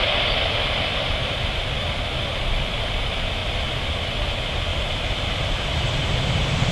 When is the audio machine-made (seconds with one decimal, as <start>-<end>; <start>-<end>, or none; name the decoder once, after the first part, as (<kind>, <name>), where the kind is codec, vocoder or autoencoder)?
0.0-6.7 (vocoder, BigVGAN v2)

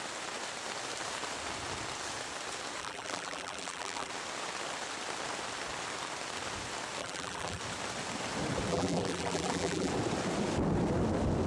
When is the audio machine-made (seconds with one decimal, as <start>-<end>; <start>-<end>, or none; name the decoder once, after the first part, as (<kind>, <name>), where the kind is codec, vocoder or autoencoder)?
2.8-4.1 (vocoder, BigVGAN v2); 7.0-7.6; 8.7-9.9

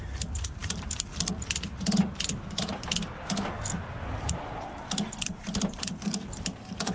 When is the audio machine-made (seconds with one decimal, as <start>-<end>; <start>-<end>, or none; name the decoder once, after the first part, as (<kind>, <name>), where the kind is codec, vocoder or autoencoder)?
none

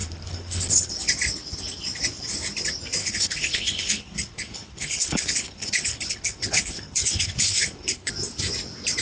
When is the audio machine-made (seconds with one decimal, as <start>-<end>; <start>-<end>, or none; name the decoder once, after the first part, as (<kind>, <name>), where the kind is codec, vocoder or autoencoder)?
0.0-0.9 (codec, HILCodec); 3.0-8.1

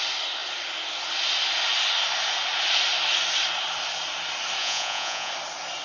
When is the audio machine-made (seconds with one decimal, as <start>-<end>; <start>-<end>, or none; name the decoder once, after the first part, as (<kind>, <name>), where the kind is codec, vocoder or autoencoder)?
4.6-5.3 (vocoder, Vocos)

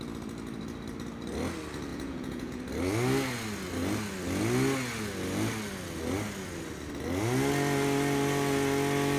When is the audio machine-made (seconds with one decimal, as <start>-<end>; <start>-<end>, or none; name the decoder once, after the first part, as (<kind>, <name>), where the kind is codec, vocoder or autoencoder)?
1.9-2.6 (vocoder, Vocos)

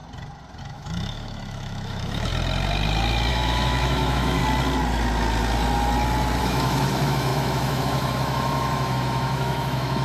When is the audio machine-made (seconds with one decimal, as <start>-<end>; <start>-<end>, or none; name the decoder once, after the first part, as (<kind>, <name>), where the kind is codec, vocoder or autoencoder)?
0.6-2.3 (autoencoder, DAC-VAE); 3.3-4.4; 6.4-10.0

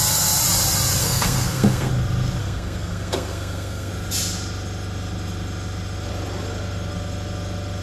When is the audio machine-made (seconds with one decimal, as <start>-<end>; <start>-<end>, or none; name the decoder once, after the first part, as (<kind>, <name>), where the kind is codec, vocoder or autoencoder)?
1.0-1.9 (codec, SNAC); 2.4-3.9